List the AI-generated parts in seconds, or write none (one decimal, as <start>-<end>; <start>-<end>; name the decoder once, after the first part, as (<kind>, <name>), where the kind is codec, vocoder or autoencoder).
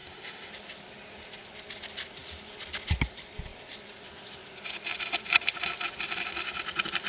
0.0-0.5 (autoencoder, DAC-VAE)